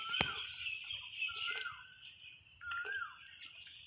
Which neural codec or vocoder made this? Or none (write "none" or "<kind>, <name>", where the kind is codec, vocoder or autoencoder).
none